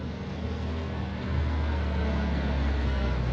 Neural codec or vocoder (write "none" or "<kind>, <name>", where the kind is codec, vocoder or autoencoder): codec, SNAC